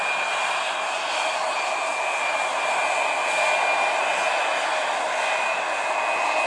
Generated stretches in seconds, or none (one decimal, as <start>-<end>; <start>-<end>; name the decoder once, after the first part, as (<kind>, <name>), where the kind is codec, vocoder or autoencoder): none